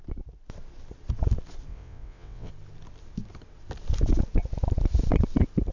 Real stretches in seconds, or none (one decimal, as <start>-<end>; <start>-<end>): 0.0-1.7; 2.5-5.7